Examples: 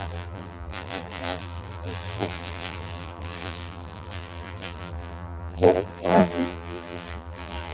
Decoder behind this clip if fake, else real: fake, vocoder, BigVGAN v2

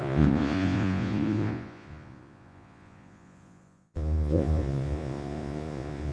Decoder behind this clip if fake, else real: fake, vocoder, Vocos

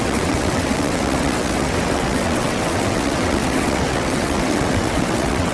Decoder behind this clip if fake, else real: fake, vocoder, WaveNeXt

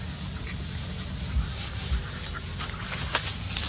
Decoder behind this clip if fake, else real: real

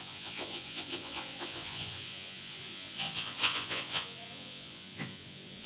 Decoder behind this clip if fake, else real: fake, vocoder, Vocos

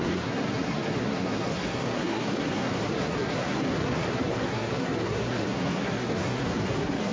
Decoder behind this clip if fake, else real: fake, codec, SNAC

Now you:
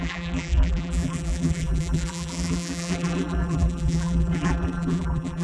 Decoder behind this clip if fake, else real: fake, vocoder, BigVGAN v2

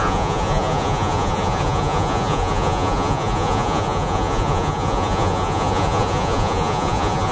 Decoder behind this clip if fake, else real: fake, vocoder, Vocos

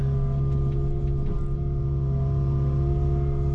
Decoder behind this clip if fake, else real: real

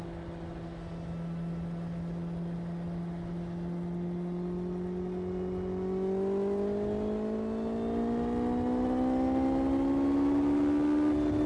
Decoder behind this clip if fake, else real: real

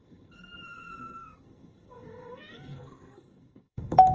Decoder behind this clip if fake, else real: fake, codec, SNAC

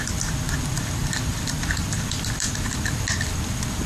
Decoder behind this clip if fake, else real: real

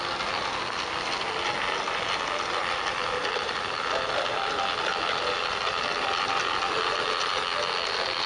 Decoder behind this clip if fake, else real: real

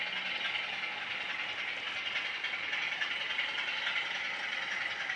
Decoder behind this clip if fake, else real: real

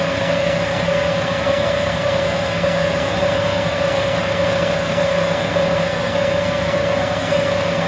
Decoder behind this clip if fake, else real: fake, codec, SNAC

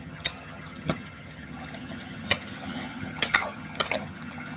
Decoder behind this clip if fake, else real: fake, vocoder, HiFi-GAN